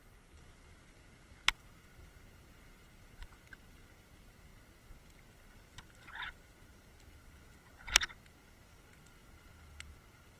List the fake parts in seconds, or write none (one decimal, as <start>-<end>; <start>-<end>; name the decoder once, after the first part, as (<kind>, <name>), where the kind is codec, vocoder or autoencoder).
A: none